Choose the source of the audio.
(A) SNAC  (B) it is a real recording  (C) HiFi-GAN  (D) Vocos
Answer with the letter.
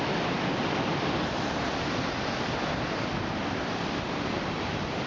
B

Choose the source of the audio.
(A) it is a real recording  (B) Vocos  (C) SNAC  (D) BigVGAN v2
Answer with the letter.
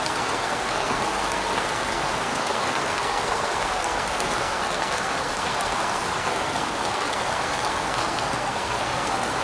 C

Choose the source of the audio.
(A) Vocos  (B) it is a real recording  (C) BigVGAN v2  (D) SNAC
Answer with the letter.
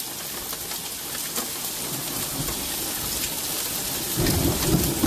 B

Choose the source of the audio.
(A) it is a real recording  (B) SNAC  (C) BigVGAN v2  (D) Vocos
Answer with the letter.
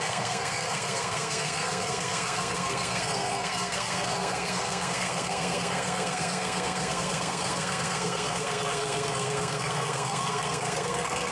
B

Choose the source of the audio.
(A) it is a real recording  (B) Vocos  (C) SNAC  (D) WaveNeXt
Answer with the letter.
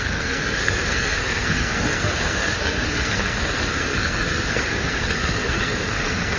C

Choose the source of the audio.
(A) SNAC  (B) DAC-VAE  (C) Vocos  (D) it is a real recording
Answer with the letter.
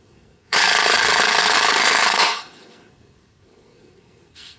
A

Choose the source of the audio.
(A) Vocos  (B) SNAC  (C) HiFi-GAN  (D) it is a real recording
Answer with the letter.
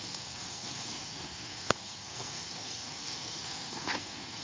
B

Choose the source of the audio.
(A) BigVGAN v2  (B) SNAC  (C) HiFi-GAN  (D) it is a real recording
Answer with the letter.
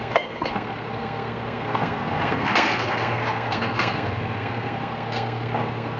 B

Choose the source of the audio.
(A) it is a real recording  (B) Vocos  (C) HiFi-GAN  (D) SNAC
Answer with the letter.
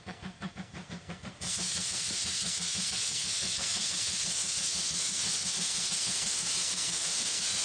D